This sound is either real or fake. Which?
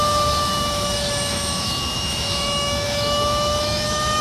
fake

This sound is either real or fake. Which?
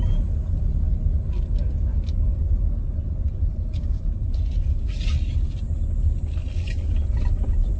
real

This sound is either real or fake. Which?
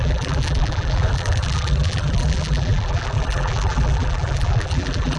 fake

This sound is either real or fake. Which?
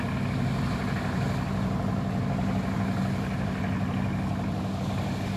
real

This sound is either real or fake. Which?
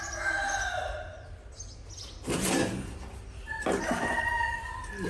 real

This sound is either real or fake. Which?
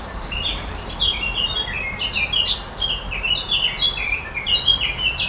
real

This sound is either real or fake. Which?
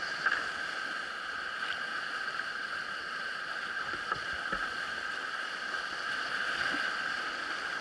real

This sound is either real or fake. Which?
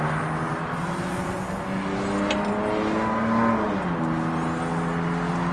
real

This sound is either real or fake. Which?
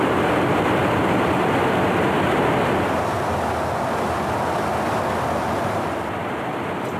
real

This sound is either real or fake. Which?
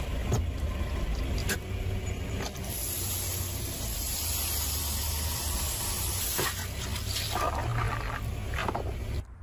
real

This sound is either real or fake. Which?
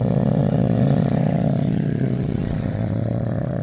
fake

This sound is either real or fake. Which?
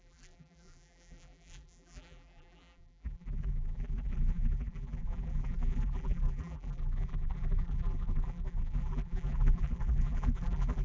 fake